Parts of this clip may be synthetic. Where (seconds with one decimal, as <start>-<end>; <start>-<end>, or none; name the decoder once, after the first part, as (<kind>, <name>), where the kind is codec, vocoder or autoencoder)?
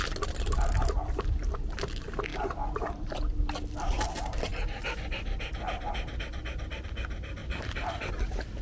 2.3-3.2 (vocoder, BigVGAN v2); 7.4-8.1